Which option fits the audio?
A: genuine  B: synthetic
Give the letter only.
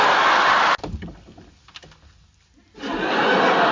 A